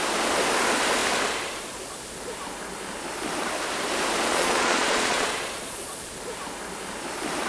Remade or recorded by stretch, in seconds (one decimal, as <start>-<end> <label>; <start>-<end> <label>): 0.0-4.3 recorded; 4.3-6.1 remade; 6.1-7.5 recorded